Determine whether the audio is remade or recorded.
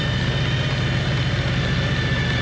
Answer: recorded